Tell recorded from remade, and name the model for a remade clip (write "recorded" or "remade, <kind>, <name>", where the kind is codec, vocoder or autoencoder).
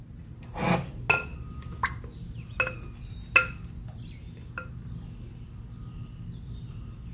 recorded